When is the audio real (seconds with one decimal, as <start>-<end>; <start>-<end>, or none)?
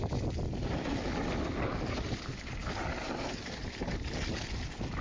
0.0-5.0